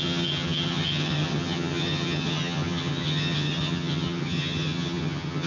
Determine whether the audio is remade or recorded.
remade